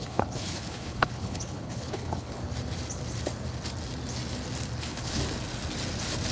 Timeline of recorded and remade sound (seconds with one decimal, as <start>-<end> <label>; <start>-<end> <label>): 0.0-2.4 remade; 2.4-4.8 recorded; 4.8-5.2 remade; 5.2-6.3 recorded